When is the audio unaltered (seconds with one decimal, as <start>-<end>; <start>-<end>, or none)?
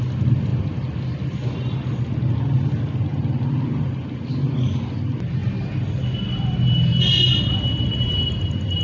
0.0-8.8